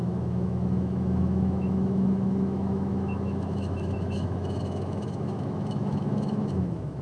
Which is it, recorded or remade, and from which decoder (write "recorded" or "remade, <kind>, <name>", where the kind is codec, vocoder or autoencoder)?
remade, autoencoder, DAC-VAE